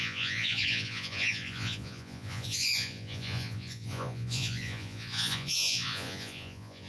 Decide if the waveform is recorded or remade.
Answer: remade